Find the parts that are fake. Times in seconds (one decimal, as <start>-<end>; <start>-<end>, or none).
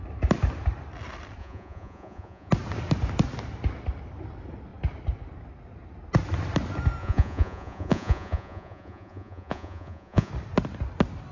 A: 1.4-2.5; 7.0-10.3